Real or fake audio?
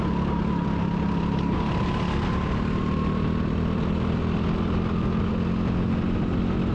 real